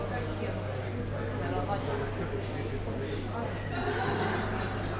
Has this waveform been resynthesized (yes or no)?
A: no